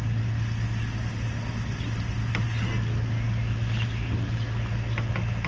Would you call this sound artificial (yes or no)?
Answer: no